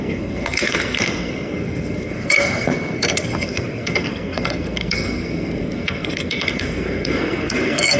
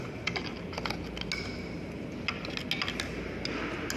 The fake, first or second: first